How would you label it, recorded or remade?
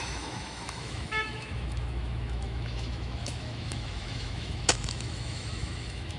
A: remade